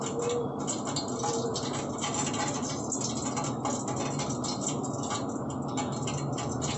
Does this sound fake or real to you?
real